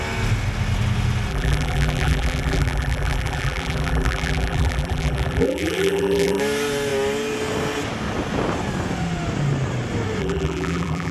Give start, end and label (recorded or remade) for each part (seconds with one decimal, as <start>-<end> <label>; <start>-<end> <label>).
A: 0.0-1.3 recorded; 1.3-6.4 remade; 6.4-10.2 recorded; 10.2-11.1 remade